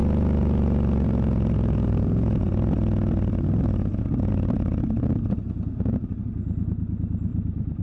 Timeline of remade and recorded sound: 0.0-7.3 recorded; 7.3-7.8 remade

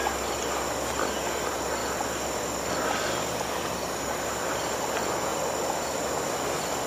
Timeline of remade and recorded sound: 0.0-1.8 remade; 1.8-2.4 recorded; 2.4-6.9 remade

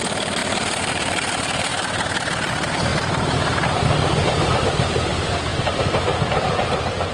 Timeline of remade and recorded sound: 0.0-1.7 remade; 1.7-2.5 recorded; 2.5-2.9 remade; 2.9-4.6 recorded; 4.6-7.1 remade

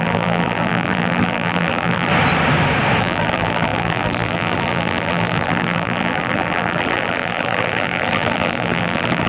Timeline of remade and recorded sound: 0.0-2.1 remade; 2.1-3.0 recorded; 3.0-9.3 remade

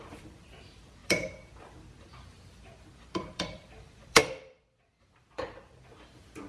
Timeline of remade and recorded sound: 0.0-6.5 remade

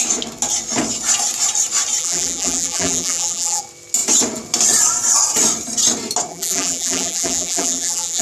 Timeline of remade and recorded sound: 0.0-2.0 recorded; 2.0-3.6 remade; 3.6-6.3 recorded; 6.3-8.2 remade

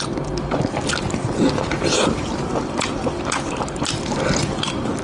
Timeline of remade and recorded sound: 0.0-1.2 recorded; 1.2-4.2 remade; 4.2-5.0 recorded